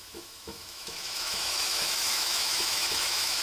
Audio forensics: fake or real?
fake